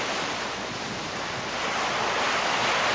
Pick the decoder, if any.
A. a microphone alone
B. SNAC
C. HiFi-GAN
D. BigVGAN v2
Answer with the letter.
A